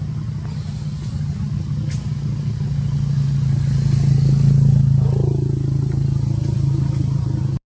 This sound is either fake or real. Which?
real